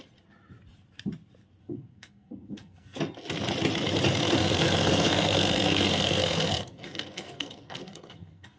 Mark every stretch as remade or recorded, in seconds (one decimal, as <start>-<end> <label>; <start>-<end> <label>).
0.0-1.6 recorded; 1.6-3.0 remade; 3.0-4.4 recorded; 4.4-8.6 remade